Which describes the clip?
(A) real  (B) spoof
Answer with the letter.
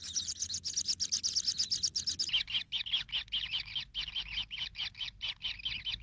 A